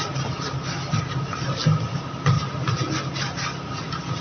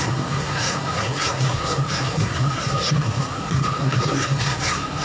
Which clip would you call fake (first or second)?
second